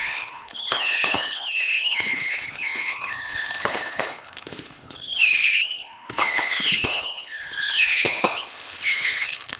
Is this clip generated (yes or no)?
yes